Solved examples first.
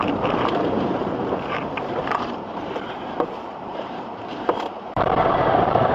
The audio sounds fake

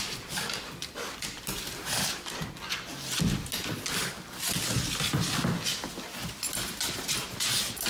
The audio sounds real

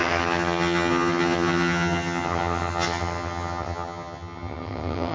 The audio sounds fake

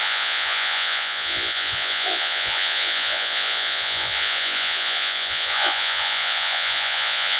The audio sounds fake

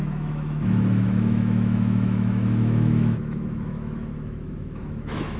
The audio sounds fake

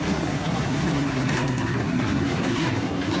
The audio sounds fake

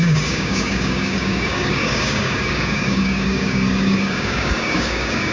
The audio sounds fake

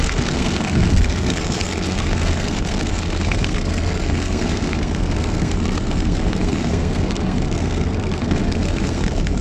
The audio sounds fake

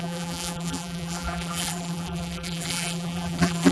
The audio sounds fake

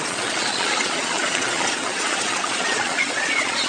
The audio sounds fake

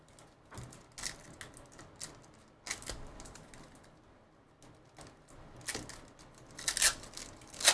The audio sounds real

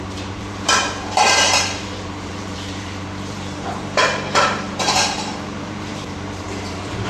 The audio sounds fake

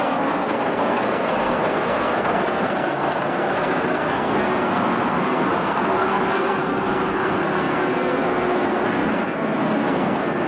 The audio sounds fake